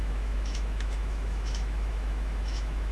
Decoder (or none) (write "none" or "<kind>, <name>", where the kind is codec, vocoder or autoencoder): autoencoder, DAC-VAE